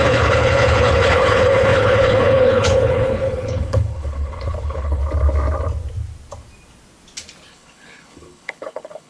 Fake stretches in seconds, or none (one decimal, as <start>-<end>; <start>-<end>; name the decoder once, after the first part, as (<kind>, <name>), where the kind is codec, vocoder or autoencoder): 0.0-5.0 (codec, HILCodec); 7.5-9.1

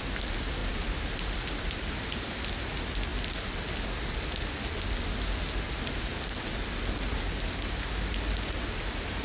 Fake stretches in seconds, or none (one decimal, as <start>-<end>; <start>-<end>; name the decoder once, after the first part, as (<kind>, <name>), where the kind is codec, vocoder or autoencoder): 0.6-2.4 (vocoder, BigVGAN v2); 3.1-4.4

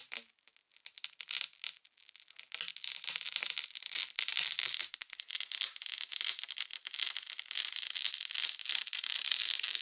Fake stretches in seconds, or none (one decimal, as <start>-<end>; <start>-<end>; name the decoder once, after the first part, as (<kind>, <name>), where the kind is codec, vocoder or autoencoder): 3.3-6.1 (vocoder, BigVGAN v2); 6.7-9.8

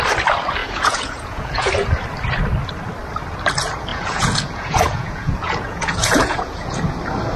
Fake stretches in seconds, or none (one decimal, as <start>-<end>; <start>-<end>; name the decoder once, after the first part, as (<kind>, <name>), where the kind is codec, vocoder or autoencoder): 0.6-1.7 (vocoder, Vocos); 3.9-6.8

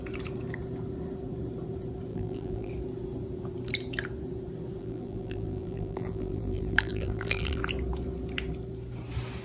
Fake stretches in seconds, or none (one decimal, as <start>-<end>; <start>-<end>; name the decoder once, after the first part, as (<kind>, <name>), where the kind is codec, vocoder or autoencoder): 2.1-2.7 (vocoder, BigVGAN v2); 4.8-7.6

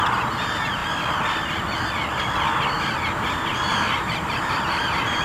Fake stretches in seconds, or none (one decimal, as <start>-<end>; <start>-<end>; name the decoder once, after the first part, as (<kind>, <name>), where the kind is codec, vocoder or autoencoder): 0.0-0.8 (vocoder, BigVGAN v2); 3.9-5.2